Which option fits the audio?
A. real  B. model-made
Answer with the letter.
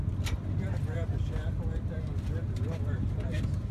A